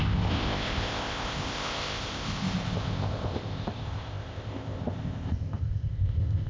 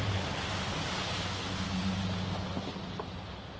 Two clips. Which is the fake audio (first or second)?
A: first